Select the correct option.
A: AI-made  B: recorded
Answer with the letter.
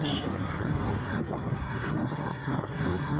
A